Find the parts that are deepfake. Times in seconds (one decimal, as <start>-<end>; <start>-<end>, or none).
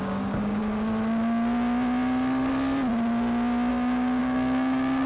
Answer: 0.0-0.6; 3.7-5.1